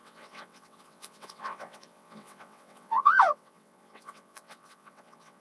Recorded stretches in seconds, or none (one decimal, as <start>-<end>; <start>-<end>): none